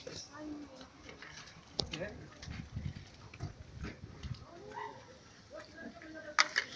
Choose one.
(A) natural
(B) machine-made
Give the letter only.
A